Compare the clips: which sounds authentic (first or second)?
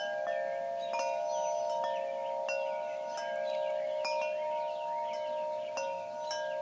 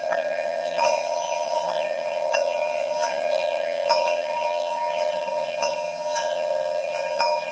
first